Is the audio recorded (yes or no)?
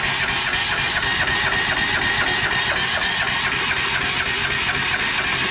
yes